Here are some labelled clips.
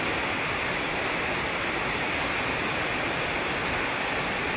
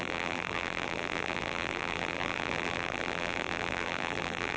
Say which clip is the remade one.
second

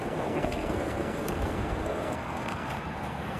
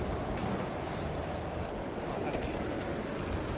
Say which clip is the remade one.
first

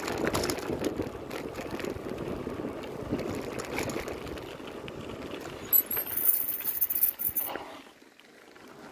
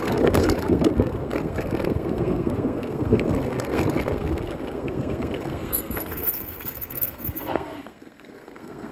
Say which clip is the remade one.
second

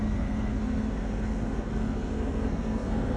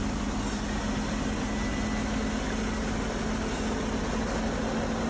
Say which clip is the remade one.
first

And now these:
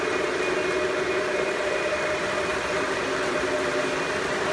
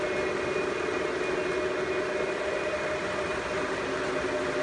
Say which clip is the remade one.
first